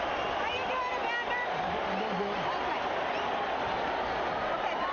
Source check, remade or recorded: recorded